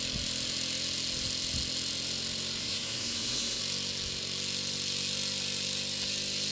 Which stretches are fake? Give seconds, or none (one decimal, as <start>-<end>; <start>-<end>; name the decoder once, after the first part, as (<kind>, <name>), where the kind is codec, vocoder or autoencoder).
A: 2.6-3.6 (codec, SNAC)

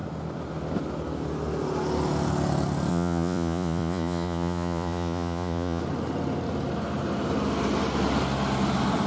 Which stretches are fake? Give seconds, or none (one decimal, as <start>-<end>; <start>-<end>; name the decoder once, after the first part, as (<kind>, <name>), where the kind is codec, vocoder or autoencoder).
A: 2.9-5.8 (vocoder, Vocos)

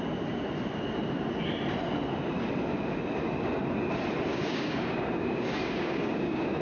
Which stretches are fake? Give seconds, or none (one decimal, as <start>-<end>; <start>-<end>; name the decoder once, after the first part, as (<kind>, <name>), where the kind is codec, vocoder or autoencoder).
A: 4.3-6.6 (codec, DAC)